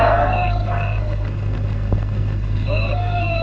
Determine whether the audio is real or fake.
fake